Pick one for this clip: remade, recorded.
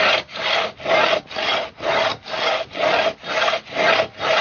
recorded